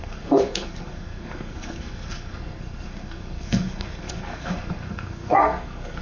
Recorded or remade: remade